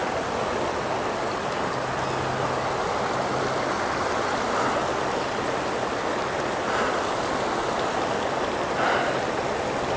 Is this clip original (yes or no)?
yes